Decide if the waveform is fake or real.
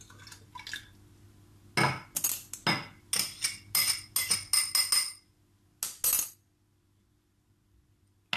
real